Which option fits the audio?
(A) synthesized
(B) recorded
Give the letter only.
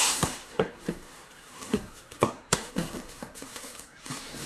A